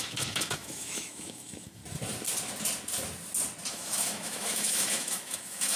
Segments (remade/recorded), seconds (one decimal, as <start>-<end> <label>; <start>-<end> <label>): 0.0-1.8 remade; 1.8-3.7 recorded; 3.7-5.8 remade